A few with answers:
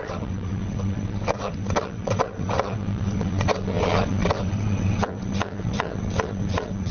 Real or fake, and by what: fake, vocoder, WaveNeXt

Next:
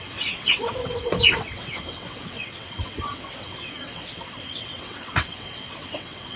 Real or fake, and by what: fake, vocoder, WaveNeXt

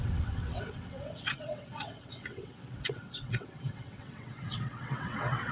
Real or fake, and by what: fake, vocoder, WaveNeXt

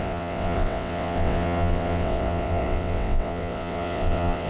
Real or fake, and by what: fake, vocoder, WaveNeXt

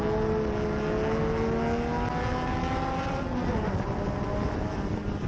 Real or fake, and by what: real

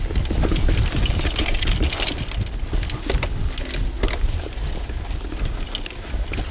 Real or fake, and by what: real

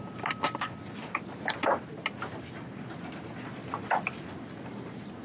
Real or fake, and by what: real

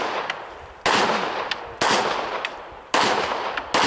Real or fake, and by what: real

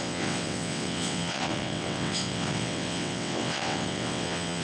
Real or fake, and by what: fake, vocoder, WaveNeXt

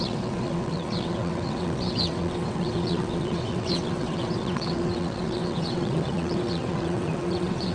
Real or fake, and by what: fake, vocoder, WaveNeXt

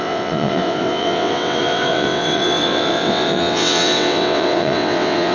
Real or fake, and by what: fake, vocoder, WaveNeXt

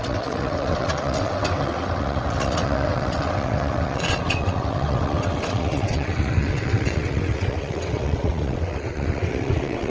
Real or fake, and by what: fake, vocoder, WaveNeXt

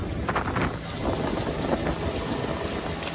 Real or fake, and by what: real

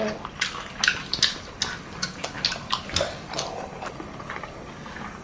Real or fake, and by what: real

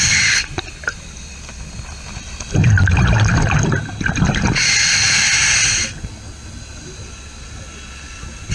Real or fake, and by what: real